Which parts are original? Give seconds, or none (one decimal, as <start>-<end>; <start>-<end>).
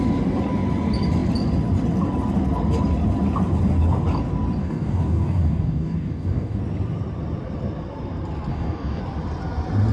0.0-4.6; 6.6-8.5; 9.0-9.9